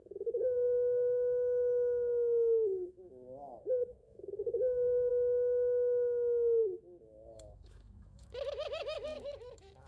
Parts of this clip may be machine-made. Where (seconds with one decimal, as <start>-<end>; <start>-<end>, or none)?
0.0-9.9